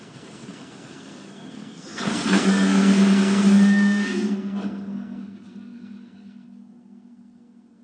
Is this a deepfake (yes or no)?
yes